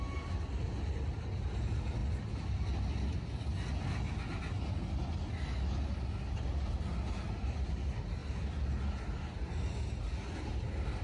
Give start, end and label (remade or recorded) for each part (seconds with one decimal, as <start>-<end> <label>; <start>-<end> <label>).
0.0-11.0 recorded